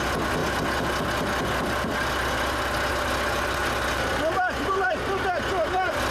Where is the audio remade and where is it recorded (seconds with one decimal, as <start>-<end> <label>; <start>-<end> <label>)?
0.0-6.1 recorded